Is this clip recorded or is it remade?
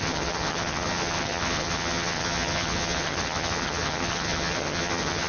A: remade